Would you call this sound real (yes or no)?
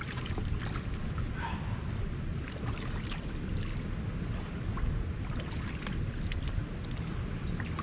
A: yes